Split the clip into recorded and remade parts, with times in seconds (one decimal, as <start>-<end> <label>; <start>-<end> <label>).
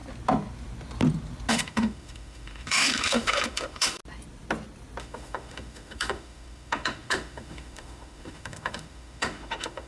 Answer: 0.0-1.5 recorded; 1.5-4.0 remade; 4.0-5.0 recorded; 5.0-9.9 remade